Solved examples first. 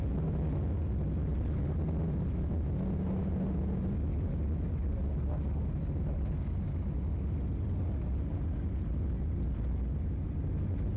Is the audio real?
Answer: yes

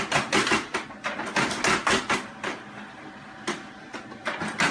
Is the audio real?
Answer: yes